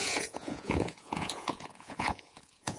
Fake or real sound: fake